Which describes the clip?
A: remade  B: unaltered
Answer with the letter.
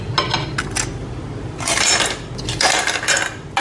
B